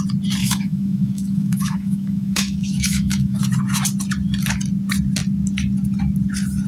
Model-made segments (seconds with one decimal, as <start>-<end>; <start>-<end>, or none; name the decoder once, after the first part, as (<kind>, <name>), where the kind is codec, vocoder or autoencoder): 0.4-3.4 (autoencoder, DAC-VAE)